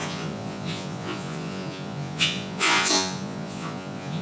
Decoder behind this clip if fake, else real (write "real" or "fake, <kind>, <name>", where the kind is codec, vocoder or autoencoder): fake, vocoder, Vocos